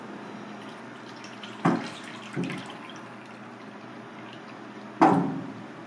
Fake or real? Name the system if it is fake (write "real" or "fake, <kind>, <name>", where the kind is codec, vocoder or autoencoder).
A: real